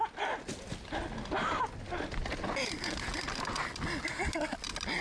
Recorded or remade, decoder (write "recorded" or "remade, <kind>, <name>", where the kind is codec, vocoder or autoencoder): recorded